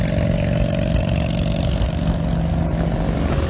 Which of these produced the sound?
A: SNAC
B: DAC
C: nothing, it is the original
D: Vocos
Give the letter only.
C